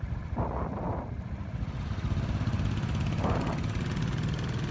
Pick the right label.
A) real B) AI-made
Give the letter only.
A